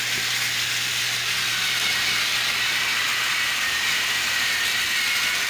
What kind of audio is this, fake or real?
real